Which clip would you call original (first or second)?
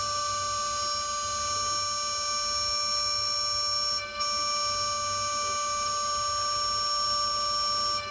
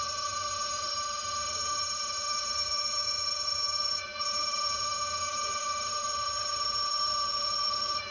first